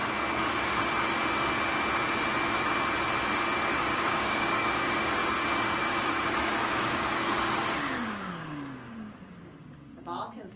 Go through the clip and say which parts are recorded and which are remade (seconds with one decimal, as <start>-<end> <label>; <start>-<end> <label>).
0.0-3.8 recorded; 3.8-10.6 remade